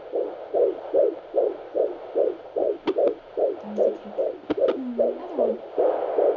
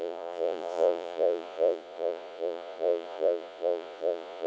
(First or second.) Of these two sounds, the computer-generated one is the second